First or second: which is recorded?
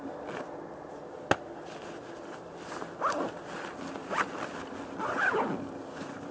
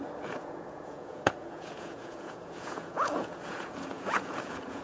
first